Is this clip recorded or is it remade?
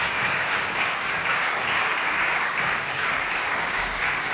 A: remade